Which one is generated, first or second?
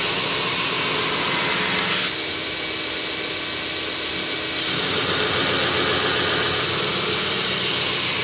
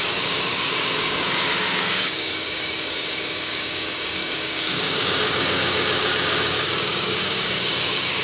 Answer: second